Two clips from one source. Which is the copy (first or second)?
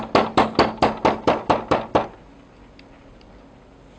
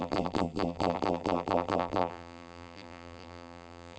second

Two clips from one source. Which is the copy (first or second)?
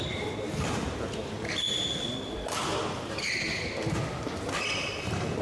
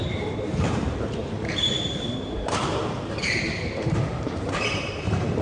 second